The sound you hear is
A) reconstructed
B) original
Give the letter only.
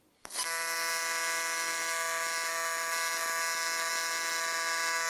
B